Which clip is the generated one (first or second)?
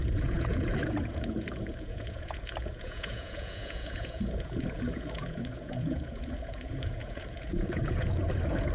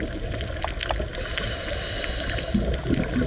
first